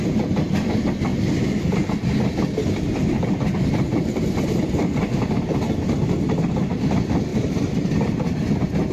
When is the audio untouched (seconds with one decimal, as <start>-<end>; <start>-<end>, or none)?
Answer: 0.0-1.1; 1.9-7.3; 7.9-8.9